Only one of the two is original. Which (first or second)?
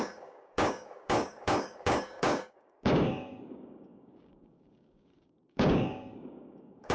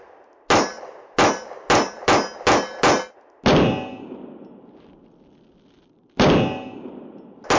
second